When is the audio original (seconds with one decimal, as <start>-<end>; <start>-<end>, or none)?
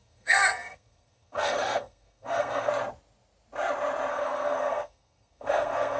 2.7-4.1